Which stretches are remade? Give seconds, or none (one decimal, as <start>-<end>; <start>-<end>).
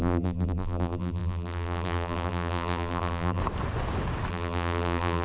0.0-3.4; 4.3-5.2